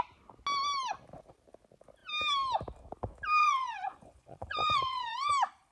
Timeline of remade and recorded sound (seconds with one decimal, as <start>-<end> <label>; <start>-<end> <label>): 0.0-3.4 recorded; 3.4-5.3 remade; 5.3-5.7 recorded